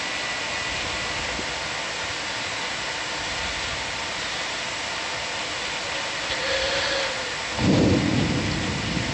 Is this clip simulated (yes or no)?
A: no